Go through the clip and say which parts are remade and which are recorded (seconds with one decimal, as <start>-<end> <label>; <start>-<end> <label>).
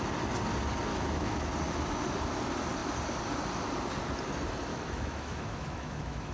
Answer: 0.0-0.9 recorded; 0.9-1.5 remade; 1.5-4.7 recorded; 4.7-6.3 remade